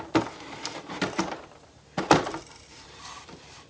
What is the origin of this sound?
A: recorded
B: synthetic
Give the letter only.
B